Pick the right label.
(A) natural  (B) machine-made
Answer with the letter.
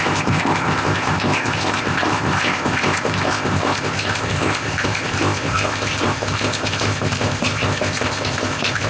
B